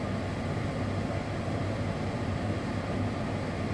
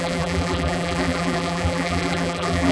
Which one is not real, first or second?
second